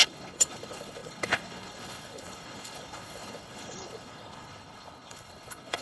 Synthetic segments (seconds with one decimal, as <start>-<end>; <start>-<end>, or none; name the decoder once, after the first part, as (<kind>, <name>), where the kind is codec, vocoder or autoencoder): 0.0-5.8 (codec, HILCodec)